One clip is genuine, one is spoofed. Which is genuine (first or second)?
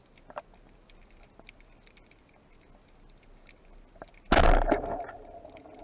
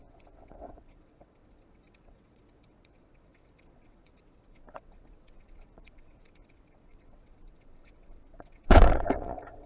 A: first